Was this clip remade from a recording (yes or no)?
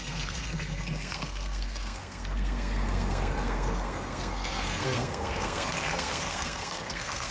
yes